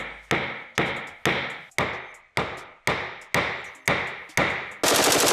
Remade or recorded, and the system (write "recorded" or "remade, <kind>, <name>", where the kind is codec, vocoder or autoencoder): recorded